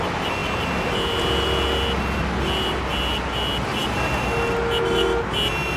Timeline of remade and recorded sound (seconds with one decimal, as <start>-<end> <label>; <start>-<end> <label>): 0.0-5.8 recorded